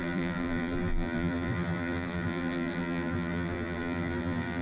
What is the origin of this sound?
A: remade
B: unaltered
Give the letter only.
A